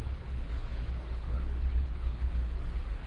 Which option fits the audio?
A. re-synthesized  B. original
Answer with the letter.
A